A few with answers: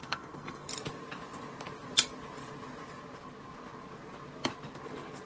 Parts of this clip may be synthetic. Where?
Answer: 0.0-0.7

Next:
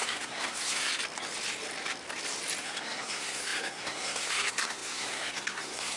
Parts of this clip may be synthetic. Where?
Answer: 0.0-0.9; 2.6-6.0

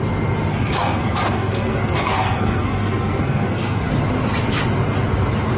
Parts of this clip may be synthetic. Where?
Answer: 0.5-3.9

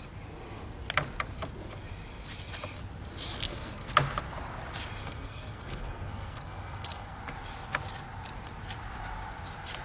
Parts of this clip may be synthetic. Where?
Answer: 3.4-3.9; 5.0-7.2

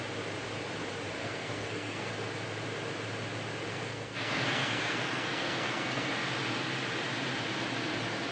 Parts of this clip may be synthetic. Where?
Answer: 1.2-2.1; 3.7-6.1

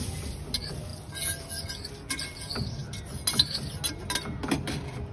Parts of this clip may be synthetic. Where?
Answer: none

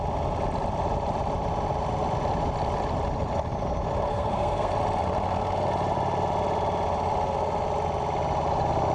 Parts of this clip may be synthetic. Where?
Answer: 4.1-4.7

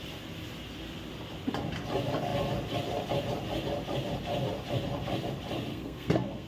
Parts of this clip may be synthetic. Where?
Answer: 5.7-6.5